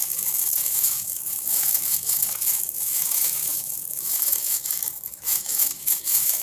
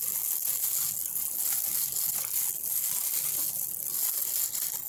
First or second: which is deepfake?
first